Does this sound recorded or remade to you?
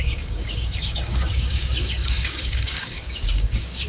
remade